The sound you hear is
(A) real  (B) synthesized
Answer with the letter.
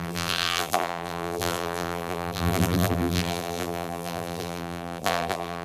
B